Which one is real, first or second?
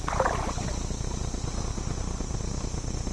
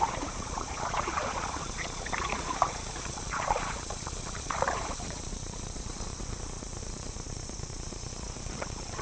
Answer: first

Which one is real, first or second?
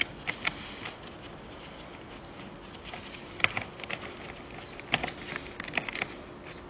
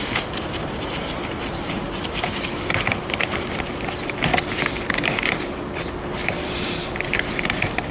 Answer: first